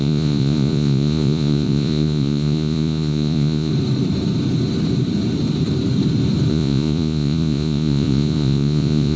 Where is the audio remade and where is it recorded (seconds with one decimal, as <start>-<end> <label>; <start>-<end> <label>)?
0.0-3.7 remade; 3.7-6.5 recorded; 6.5-9.2 remade

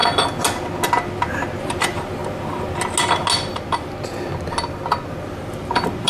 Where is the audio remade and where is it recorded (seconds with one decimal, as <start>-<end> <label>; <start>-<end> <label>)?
0.0-1.6 recorded; 1.6-2.2 remade; 2.2-5.2 recorded; 5.2-6.1 remade

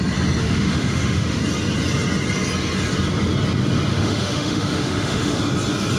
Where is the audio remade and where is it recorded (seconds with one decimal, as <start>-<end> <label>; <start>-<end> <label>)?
0.0-0.4 recorded; 0.4-1.4 remade; 1.4-3.9 recorded; 3.9-5.4 remade; 5.4-6.0 recorded

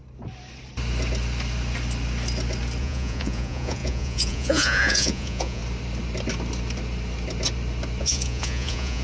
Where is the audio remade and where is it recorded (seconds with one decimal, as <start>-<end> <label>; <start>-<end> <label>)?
0.0-2.8 recorded; 2.8-5.6 remade; 5.6-8.0 recorded; 8.0-9.0 remade

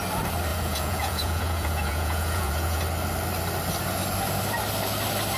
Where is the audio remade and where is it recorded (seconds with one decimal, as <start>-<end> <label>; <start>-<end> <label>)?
0.0-0.5 recorded; 0.5-2.8 remade; 2.8-5.4 recorded

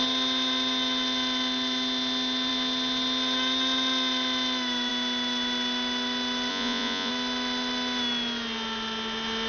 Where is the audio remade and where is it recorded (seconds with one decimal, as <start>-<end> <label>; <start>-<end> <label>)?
0.0-6.5 recorded; 6.5-7.1 remade; 7.1-9.5 recorded